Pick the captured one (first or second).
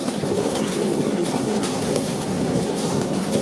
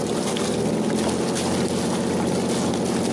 second